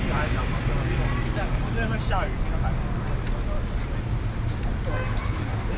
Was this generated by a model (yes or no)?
no